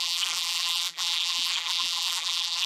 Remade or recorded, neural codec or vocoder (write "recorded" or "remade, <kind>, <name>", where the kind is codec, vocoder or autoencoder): remade, vocoder, BigVGAN v2